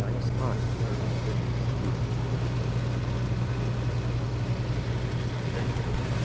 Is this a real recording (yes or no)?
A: yes